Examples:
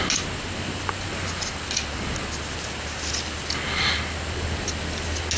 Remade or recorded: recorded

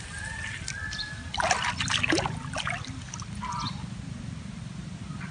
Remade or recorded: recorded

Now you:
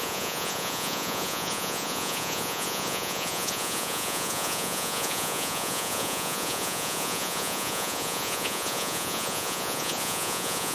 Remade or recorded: remade